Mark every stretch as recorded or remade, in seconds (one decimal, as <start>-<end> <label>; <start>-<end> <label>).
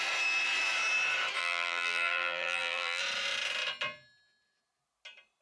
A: 0.0-1.4 recorded; 1.4-3.0 remade; 3.0-5.4 recorded